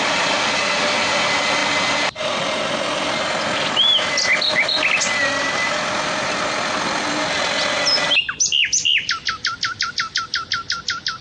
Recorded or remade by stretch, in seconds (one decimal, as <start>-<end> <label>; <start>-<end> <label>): 0.0-11.2 recorded